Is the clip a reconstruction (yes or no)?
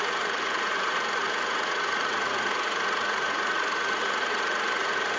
yes